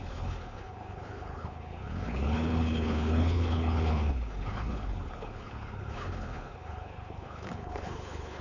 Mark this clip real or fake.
fake